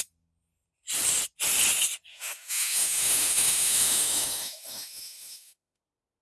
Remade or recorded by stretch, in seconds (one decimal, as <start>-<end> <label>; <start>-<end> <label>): 0.0-2.1 recorded; 2.1-5.8 remade; 5.8-6.2 recorded